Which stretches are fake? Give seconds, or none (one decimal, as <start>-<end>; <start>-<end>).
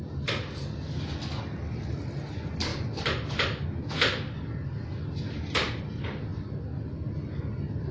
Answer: none